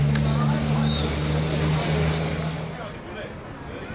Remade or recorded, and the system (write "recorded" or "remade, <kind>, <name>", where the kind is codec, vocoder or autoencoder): recorded